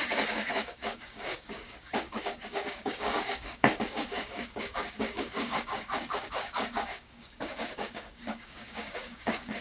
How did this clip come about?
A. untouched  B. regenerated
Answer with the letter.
B